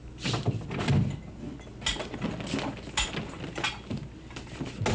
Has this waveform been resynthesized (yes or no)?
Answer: no